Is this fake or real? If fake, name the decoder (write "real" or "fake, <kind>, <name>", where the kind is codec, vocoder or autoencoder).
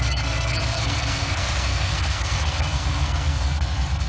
fake, codec, SNAC